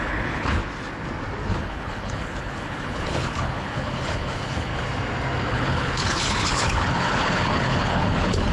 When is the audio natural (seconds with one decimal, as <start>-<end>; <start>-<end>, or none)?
0.6-1.5; 4.7-5.5